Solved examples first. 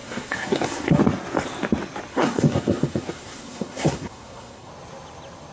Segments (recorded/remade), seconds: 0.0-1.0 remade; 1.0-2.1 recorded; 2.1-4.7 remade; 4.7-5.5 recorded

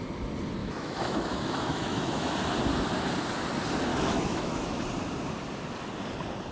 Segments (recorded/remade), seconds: 0.0-0.6 recorded; 0.6-2.3 remade; 2.3-3.9 recorded; 3.9-4.8 remade; 4.8-6.5 recorded

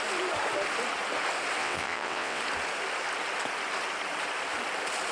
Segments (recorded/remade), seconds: 0.0-1.6 recorded; 1.6-2.4 remade; 2.4-5.1 recorded